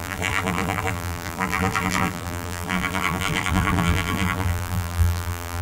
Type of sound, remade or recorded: remade